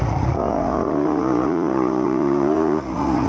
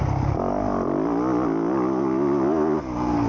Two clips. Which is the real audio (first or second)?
second